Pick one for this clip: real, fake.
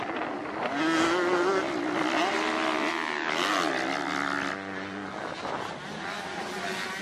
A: real